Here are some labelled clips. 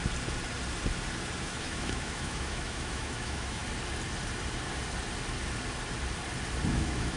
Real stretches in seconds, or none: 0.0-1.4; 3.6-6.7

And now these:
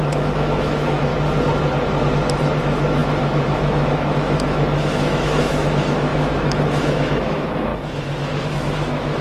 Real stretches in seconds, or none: 1.1-2.6; 7.7-8.4

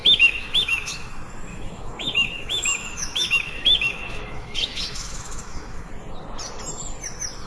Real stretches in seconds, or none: 1.1-1.5; 5.9-7.5

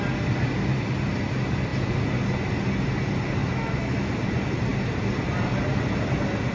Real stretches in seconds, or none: 0.0-3.4; 4.1-6.5

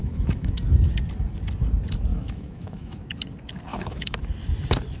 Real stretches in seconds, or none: 0.6-2.1; 3.1-3.7; 4.2-5.0